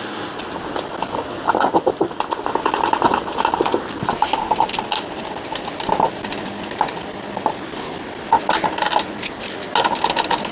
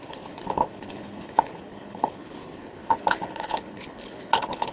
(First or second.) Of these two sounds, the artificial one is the second